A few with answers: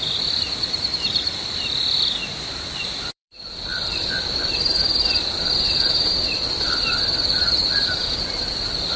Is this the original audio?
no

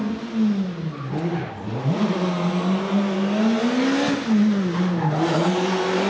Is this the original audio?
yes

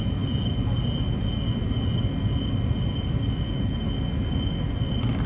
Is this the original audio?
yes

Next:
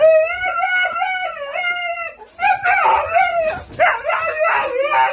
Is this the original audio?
yes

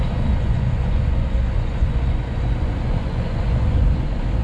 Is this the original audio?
no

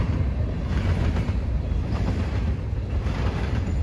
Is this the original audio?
no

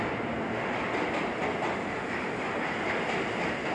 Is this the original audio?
yes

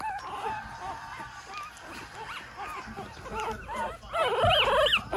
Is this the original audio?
yes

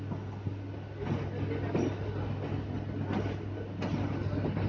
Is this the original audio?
yes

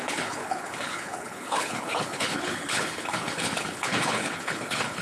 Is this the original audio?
no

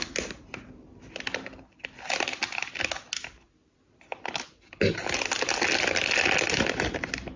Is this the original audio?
yes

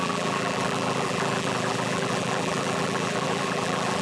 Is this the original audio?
no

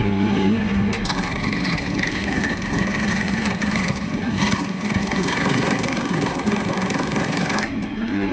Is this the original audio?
no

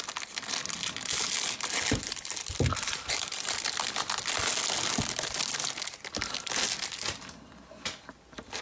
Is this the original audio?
yes